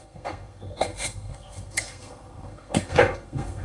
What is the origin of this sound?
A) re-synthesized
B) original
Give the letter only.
A